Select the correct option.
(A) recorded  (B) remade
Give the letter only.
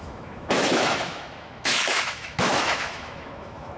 B